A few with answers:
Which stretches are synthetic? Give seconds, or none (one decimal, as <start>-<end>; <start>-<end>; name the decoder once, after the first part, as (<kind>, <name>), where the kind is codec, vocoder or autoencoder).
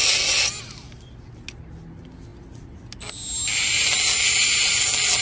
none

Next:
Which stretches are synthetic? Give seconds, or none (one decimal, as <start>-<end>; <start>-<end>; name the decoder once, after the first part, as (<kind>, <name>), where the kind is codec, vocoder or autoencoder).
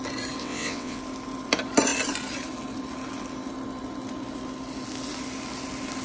0.4-1.0 (vocoder, WaveNeXt)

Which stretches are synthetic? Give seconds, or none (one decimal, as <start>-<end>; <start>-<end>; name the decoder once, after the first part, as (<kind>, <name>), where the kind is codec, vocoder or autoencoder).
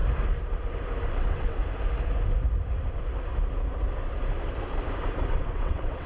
1.1-1.6 (vocoder, WaveNeXt); 5.3-6.1